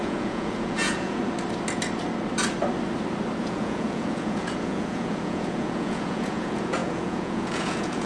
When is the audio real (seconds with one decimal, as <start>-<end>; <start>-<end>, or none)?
1.2-3.4